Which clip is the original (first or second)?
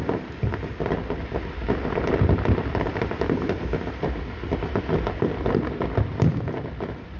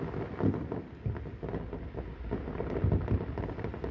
second